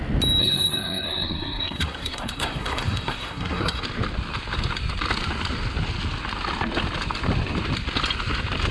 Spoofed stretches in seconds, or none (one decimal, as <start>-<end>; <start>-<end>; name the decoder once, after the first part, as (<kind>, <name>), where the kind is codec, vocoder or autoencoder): 0.4-3.8 (codec, SNAC)

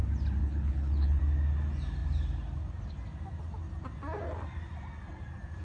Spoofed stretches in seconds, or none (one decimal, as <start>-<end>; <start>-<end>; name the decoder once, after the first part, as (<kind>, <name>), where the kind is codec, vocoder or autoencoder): 0.4-1.2 (codec, HILCodec)

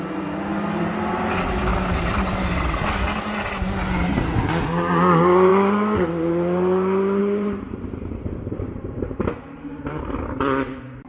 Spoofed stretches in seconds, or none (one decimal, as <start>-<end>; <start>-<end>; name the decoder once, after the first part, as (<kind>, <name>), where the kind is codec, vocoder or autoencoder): 7.2-10.1 (vocoder, BigVGAN v2)